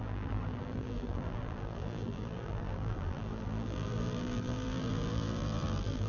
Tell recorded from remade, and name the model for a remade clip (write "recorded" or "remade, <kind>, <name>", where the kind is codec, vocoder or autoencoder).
remade, vocoder, BigVGAN v2